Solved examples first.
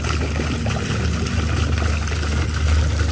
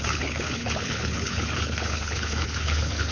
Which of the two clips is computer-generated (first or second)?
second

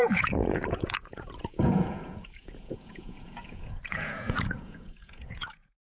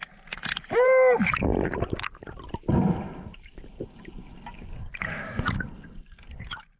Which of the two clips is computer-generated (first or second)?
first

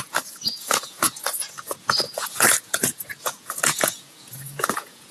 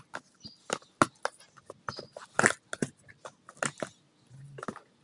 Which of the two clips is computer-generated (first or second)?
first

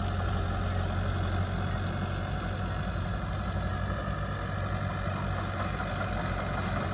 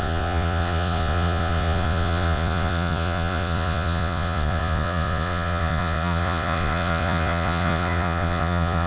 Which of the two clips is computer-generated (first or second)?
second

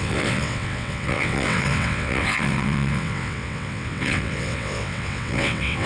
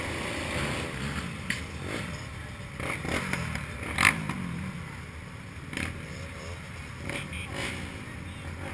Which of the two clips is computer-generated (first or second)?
first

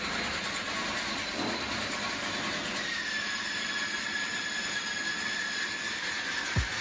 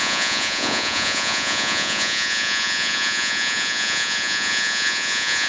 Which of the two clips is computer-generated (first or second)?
second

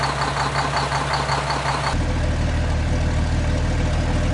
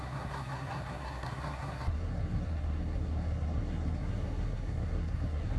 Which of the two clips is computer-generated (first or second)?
second